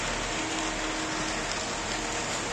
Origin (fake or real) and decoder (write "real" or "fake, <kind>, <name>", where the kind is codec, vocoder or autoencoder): real